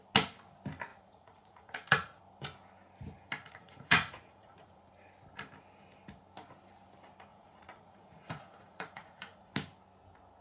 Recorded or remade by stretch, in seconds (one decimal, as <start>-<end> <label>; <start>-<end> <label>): 0.0-0.9 recorded; 0.9-2.2 remade; 2.2-3.4 recorded; 3.4-4.8 remade; 4.8-7.3 recorded; 7.3-9.5 remade; 9.5-10.4 recorded